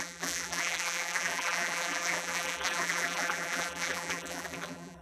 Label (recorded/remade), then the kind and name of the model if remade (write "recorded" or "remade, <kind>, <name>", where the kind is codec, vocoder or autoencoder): remade, vocoder, BigVGAN v2